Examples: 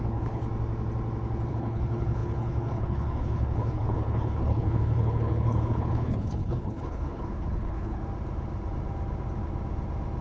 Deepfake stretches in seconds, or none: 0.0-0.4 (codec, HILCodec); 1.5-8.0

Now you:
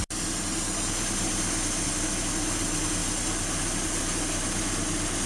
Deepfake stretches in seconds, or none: none

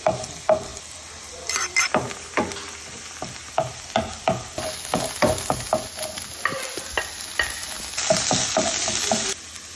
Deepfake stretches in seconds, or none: none

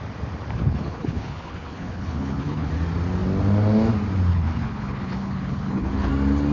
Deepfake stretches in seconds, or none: 0.6-2.7 (codec, HILCodec); 4.3-6.1